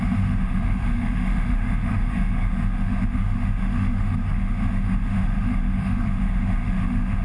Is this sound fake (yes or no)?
yes